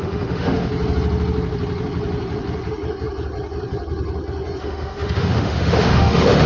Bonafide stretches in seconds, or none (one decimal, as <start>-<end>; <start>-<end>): 0.7-4.6